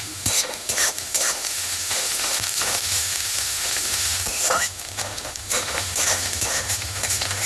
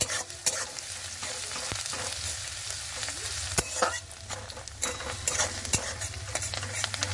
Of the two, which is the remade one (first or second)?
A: first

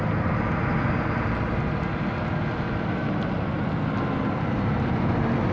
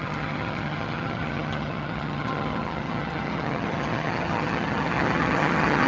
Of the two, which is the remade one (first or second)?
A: second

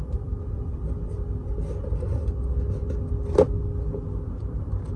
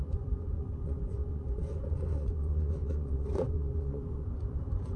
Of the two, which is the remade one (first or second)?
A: second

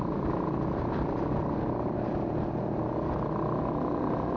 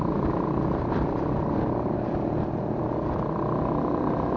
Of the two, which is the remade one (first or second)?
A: second